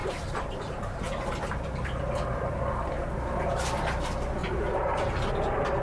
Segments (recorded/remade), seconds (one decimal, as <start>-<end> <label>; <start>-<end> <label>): 0.0-1.0 remade; 1.0-4.4 recorded; 4.4-5.1 remade; 5.1-5.8 recorded